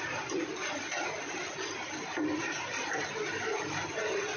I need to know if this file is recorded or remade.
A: recorded